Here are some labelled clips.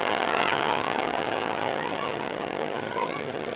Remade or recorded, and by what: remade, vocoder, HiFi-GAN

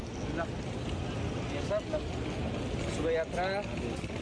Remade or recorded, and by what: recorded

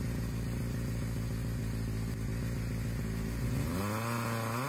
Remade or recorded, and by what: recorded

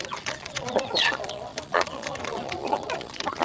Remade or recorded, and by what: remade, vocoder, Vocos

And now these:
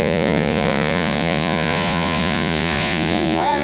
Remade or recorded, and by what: remade, vocoder, Vocos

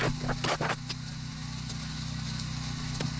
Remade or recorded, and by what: recorded